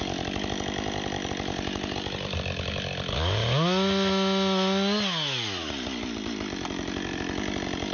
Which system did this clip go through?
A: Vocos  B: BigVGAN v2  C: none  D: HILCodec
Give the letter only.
C